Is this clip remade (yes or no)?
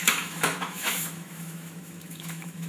yes